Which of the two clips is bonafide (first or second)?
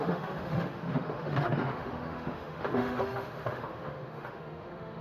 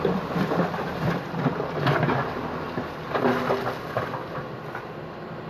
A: second